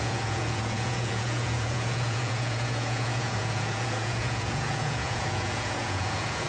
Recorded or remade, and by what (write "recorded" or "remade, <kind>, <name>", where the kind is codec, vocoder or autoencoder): remade, vocoder, Vocos